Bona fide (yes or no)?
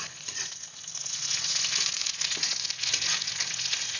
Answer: no